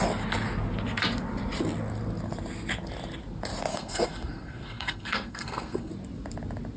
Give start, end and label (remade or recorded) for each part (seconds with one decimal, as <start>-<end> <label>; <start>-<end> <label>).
0.0-3.7 recorded; 3.7-5.9 remade; 5.9-6.8 recorded